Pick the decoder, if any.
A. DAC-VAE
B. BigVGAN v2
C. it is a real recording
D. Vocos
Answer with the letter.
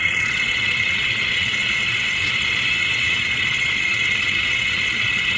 D